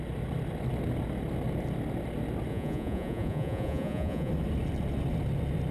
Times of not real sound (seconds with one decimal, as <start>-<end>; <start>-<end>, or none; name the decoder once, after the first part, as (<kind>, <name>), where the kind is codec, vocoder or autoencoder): 2.5-4.3 (vocoder, Vocos)